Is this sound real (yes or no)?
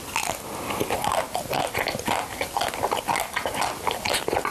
yes